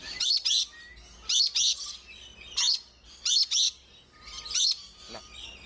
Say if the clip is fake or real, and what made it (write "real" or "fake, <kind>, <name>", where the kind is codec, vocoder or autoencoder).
real